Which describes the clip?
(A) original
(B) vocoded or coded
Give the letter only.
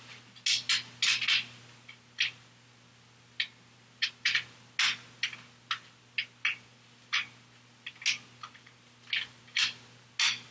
A